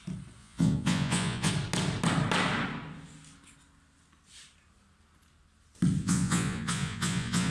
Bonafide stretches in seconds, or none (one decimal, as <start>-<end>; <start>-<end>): 0.0-0.4; 1.5-6.0